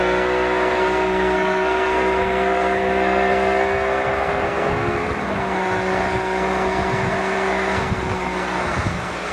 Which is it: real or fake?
fake